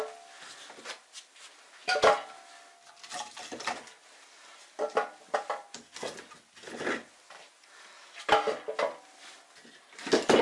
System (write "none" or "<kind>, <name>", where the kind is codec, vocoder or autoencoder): none